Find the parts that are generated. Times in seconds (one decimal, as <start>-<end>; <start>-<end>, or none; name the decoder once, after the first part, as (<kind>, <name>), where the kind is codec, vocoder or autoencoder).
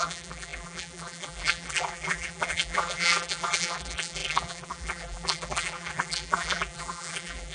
0.0-7.5 (vocoder, BigVGAN v2)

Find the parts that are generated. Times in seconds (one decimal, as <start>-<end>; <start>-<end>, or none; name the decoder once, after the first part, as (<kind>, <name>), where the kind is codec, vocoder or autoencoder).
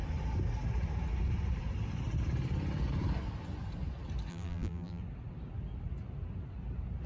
4.3-5.0 (vocoder, BigVGAN v2)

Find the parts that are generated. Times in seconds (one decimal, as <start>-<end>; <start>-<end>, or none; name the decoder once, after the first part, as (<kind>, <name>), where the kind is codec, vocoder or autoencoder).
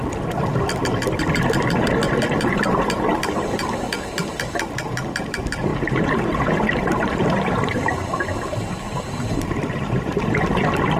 0.0-8.3 (vocoder, BigVGAN v2); 9.4-11.0